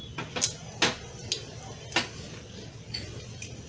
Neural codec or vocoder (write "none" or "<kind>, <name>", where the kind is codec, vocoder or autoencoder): none